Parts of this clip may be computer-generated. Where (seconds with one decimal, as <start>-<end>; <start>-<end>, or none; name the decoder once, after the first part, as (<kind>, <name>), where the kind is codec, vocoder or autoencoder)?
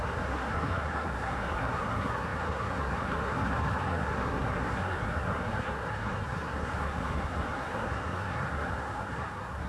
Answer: 0.0-9.7 (codec, SNAC)